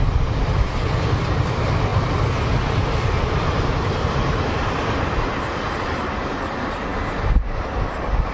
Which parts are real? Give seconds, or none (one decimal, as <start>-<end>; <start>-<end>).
0.0-8.3